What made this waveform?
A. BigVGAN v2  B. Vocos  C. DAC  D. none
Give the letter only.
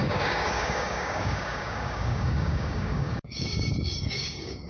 C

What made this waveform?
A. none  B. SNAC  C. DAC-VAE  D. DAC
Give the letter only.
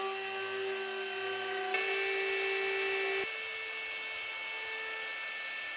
A